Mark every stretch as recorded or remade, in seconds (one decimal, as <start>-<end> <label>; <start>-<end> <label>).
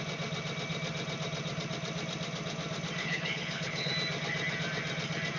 0.0-3.0 recorded; 3.0-3.9 remade; 3.9-5.4 recorded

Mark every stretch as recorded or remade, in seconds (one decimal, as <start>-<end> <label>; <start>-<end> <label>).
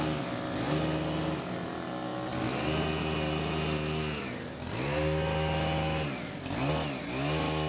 0.0-7.7 recorded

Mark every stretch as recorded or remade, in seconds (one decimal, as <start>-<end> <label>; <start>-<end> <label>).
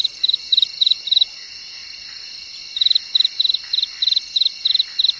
0.0-5.2 recorded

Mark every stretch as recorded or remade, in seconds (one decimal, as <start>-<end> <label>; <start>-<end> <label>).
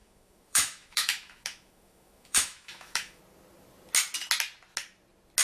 0.0-3.2 remade; 3.2-5.4 recorded